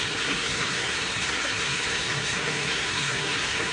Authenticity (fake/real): fake